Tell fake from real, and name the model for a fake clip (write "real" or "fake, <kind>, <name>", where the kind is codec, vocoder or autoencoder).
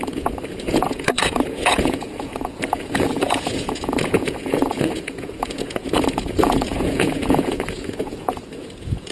fake, vocoder, Vocos